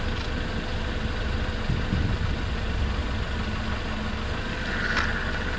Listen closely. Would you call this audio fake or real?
real